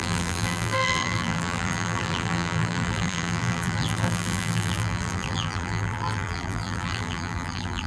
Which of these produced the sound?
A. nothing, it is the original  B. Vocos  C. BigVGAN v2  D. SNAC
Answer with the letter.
C